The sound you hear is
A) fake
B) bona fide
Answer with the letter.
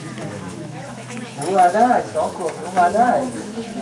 A